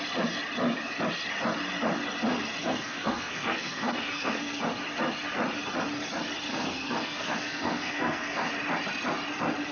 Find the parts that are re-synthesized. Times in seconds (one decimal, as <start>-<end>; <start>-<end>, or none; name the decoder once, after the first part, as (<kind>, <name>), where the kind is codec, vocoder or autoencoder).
2.6-4.6 (codec, SNAC); 6.5-8.5